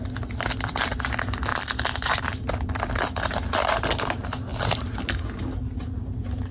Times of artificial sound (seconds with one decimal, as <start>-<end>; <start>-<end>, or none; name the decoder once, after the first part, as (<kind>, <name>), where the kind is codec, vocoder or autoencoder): none